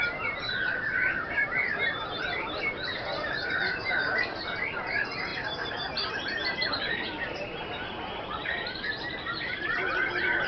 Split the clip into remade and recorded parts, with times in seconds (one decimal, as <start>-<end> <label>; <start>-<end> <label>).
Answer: 0.0-5.3 remade; 5.3-6.1 recorded; 6.1-10.5 remade